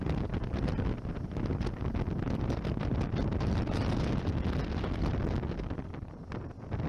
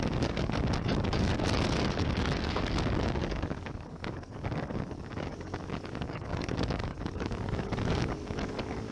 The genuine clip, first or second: first